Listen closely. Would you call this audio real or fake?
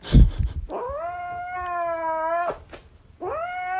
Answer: real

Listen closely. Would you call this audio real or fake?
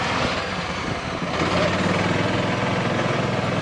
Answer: real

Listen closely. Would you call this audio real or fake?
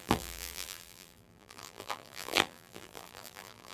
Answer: fake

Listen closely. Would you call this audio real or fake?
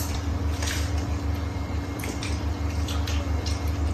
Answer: fake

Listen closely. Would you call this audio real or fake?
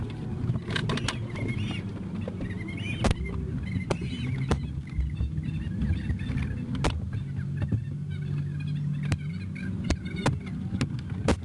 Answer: real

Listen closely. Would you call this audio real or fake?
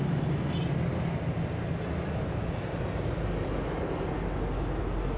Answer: real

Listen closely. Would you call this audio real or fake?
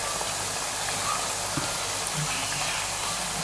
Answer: real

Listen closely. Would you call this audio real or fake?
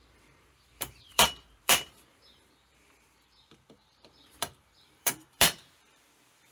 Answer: fake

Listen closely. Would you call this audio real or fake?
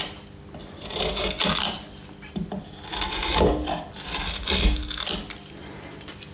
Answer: real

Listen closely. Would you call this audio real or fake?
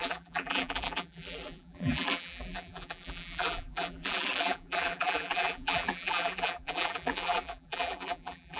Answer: fake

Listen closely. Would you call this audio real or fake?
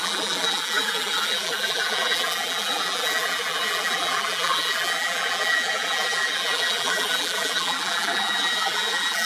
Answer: fake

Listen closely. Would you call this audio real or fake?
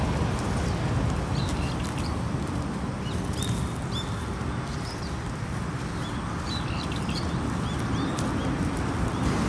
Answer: real